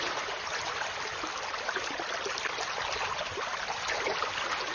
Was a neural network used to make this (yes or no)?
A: no